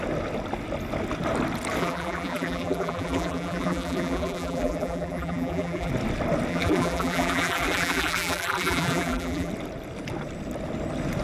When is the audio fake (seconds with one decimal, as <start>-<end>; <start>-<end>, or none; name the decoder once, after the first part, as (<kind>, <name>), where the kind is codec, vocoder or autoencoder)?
1.8-5.9 (vocoder, BigVGAN v2); 6.5-9.5